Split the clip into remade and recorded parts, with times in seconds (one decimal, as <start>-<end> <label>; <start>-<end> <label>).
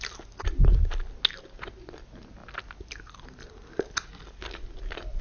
0.0-5.2 recorded